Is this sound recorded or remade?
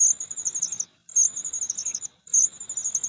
recorded